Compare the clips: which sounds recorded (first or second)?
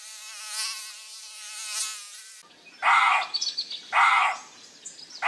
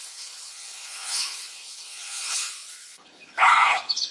first